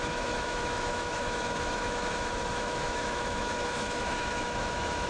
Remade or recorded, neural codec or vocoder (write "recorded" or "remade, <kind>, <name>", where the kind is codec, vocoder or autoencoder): remade, autoencoder, DAC-VAE